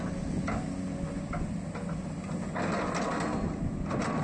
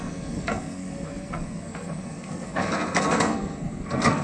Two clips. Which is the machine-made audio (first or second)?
second